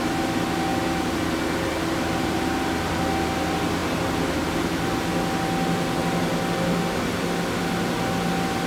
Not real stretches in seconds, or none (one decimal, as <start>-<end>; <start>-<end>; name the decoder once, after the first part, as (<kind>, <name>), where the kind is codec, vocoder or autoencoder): none